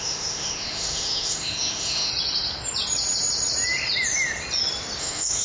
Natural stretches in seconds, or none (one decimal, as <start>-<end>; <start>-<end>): 2.1-5.0